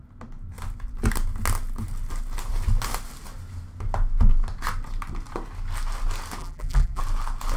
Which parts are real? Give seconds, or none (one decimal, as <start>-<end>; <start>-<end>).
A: 0.0-6.4; 7.0-7.6